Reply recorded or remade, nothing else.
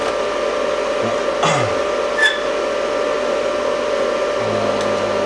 recorded